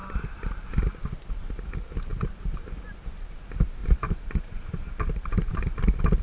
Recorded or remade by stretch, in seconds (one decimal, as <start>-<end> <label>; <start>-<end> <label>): 0.0-2.1 recorded; 2.1-2.7 remade; 2.7-3.8 recorded; 3.8-5.5 remade; 5.5-6.2 recorded